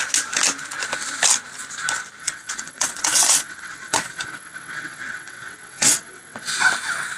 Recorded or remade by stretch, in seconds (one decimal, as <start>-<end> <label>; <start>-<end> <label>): 0.0-2.2 recorded; 2.2-6.5 remade; 6.5-7.2 recorded